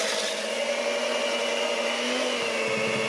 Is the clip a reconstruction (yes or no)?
no